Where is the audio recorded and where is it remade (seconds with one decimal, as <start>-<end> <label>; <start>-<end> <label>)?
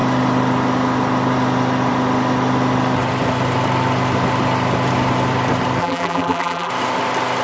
0.0-5.8 recorded; 5.8-6.7 remade; 6.7-7.4 recorded